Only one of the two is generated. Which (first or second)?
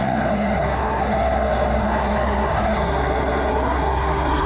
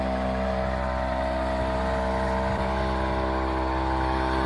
first